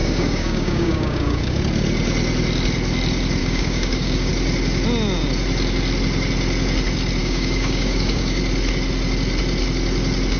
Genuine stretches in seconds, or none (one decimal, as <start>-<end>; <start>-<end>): 1.6-3.4; 4.3-7.2; 8.4-10.4